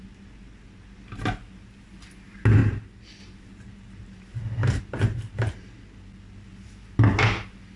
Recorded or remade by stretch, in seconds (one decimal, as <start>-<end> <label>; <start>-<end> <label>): 0.0-7.8 recorded